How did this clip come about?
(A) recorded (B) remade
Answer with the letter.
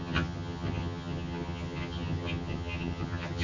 B